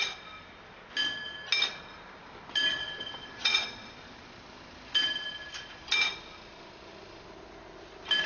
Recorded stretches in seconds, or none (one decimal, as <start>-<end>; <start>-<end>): 0.0-2.7; 3.9-8.3

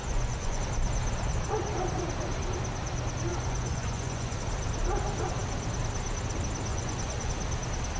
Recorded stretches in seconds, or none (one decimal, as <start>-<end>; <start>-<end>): 0.6-3.3; 4.4-6.7; 7.3-8.0

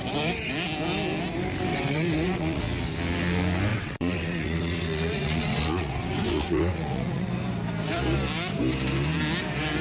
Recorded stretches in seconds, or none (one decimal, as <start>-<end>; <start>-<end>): 0.0-1.7; 2.6-3.7; 7.3-9.8

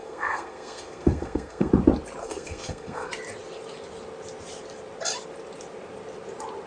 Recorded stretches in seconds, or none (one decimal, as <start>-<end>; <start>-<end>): 1.7-2.2; 3.1-6.7

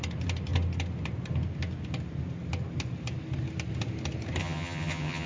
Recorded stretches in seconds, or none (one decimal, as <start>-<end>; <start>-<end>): 0.0-4.4

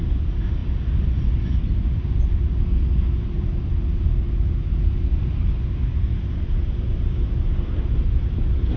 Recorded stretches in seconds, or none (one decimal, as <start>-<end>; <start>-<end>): 0.0-8.8

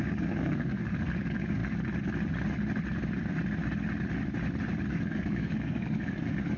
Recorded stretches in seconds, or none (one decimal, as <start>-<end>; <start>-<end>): 1.6-4.9